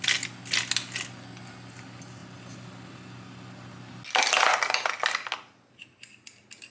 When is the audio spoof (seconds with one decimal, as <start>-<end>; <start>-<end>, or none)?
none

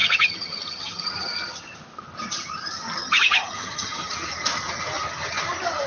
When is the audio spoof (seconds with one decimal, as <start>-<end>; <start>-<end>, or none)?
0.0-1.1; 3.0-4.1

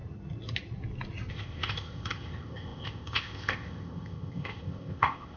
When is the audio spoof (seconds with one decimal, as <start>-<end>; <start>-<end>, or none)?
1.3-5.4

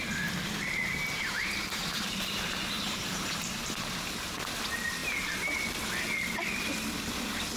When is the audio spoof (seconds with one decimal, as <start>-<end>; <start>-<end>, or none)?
1.0-4.0; 5.0-5.6

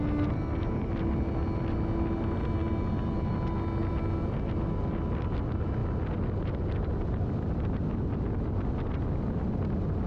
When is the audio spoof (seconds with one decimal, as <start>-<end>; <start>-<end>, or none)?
none

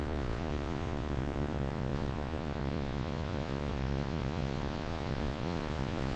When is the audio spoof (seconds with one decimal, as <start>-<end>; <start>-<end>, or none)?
0.0-6.2

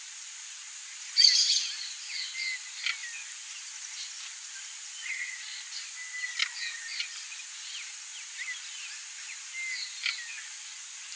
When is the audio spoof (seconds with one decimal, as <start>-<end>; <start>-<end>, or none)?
none

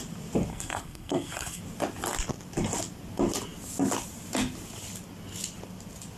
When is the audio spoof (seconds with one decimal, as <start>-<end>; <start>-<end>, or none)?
0.5-1.6